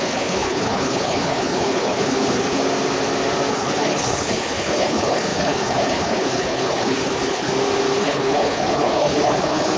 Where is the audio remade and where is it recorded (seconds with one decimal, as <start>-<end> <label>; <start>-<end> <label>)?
0.0-2.6 remade; 2.6-3.5 recorded; 3.5-7.5 remade; 7.5-8.0 recorded; 8.0-9.8 remade